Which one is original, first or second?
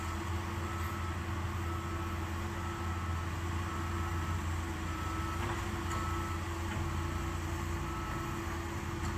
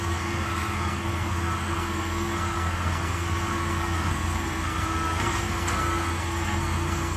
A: first